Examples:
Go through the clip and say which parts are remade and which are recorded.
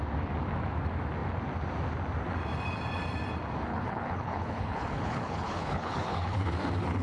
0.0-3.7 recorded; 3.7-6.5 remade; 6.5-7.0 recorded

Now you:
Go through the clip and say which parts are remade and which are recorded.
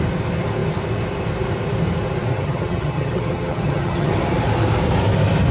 0.0-2.3 recorded; 2.3-4.1 remade; 4.1-5.5 recorded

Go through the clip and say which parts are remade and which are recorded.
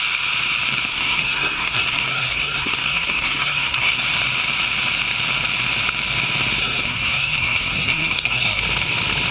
0.0-0.9 recorded; 0.9-4.0 remade; 4.0-6.6 recorded; 6.6-8.6 remade; 8.6-9.3 recorded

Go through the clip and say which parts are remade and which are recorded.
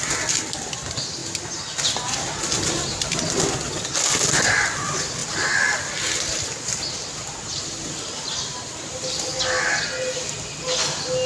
0.0-11.3 recorded